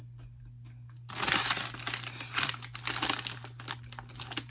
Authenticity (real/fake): real